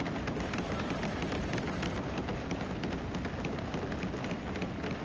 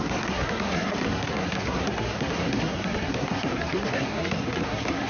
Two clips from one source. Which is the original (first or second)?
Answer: first